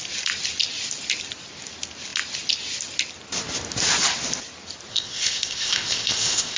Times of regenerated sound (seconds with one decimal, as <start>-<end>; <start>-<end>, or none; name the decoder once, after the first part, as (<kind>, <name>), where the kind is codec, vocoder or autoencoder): 4.9-6.6 (codec, ZipCodec)